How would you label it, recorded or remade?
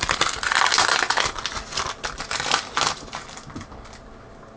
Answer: recorded